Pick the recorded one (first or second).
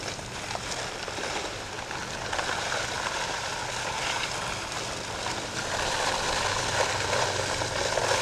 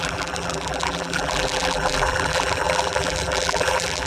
first